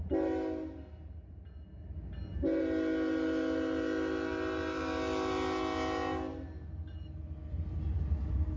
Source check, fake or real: real